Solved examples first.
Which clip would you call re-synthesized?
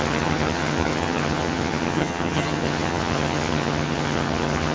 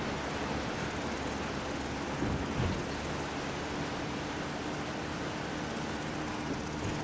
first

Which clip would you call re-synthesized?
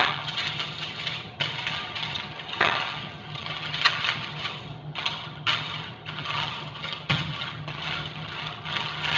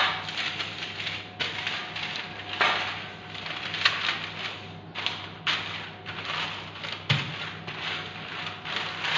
first